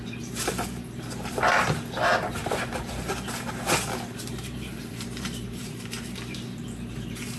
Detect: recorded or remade remade